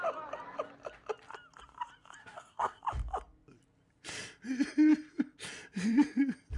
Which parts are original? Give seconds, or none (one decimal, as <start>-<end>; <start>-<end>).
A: 0.0-2.2; 2.8-6.6